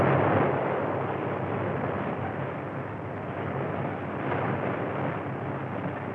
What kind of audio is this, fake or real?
real